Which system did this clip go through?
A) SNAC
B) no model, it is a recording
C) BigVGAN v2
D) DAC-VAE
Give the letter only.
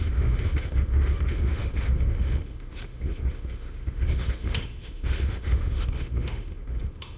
D